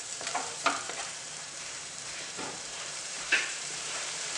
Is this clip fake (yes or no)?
yes